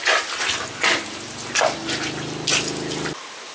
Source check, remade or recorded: recorded